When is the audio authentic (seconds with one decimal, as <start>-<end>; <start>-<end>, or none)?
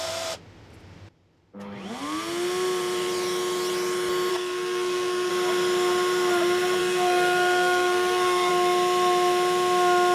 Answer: 0.0-4.3; 5.3-6.8; 8.5-10.1